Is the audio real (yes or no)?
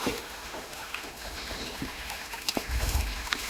no